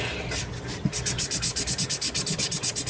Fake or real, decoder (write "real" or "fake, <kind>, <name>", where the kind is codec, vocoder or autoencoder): real